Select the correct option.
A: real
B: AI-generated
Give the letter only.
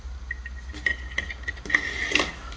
A